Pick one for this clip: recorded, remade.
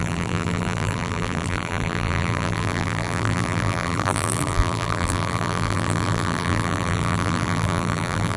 remade